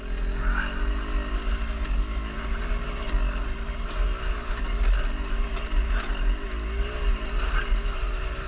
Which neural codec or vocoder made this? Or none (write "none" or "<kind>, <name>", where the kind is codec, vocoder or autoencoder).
none